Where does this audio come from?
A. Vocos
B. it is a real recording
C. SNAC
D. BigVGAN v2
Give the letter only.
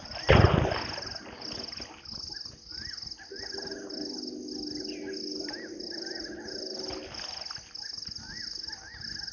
B